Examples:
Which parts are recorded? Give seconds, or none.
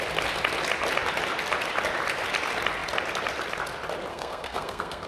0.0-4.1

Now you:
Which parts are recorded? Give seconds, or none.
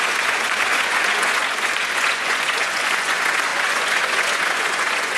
none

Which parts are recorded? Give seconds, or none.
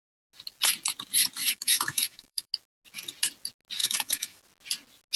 0.0-1.4; 2.5-3.8; 4.4-5.2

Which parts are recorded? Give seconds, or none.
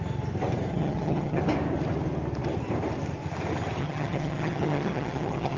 0.0-0.7; 1.4-3.8